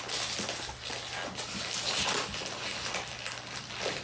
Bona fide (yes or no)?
yes